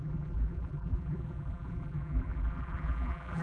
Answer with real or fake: fake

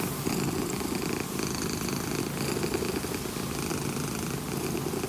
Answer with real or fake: real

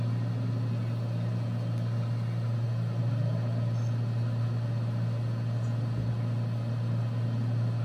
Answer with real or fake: real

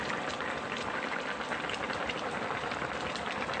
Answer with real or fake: real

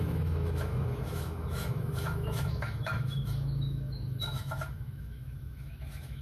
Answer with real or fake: fake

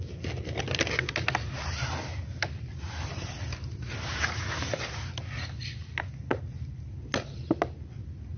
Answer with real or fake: real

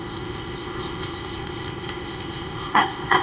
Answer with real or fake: fake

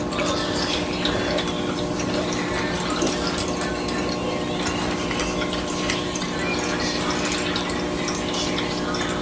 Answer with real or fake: real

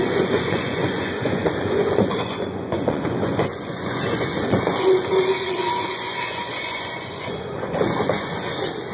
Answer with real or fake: fake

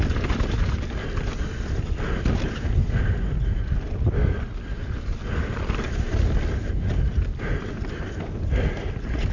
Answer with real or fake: real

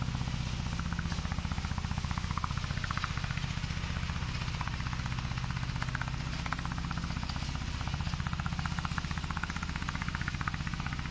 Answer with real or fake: real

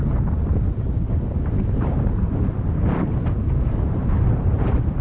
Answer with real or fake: fake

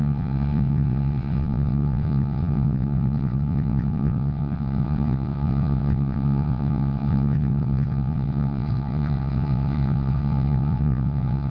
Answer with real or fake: fake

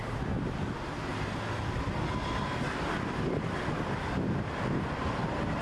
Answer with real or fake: real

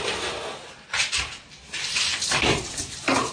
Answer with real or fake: real